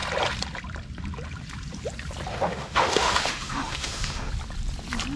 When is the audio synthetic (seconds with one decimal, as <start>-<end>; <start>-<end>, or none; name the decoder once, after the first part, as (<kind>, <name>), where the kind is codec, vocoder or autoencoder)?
2.3-4.3 (autoencoder, DAC-VAE)